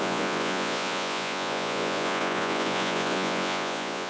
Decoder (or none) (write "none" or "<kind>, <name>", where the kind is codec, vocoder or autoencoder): vocoder, Vocos